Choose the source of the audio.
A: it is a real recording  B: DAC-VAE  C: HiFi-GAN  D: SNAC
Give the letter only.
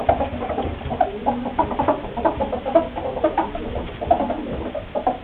A